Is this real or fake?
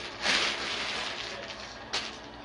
real